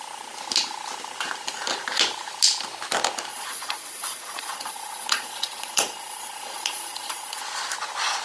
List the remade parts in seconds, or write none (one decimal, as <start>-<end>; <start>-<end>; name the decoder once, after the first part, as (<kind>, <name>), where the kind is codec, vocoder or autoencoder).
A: 3.3-7.4 (vocoder, Vocos)